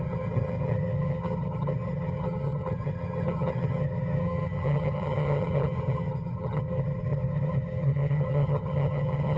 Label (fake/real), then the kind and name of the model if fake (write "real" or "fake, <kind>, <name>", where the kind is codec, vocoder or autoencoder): fake, vocoder, HiFi-GAN